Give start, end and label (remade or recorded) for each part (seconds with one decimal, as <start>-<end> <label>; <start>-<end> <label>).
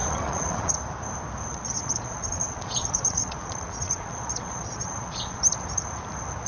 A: 0.0-0.7 remade; 0.7-1.5 recorded; 1.5-5.4 remade; 5.4-6.5 recorded